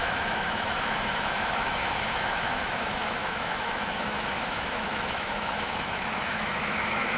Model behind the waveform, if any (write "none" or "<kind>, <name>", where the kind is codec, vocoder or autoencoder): autoencoder, DAC-VAE